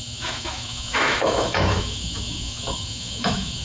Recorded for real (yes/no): no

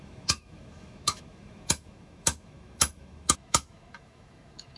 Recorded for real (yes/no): no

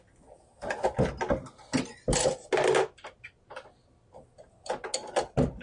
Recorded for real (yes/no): yes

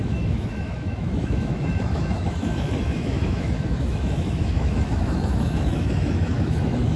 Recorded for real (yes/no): no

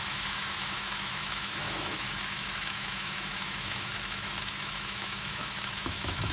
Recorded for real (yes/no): no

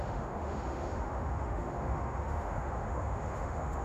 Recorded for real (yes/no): no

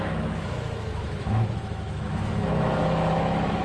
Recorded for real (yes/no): no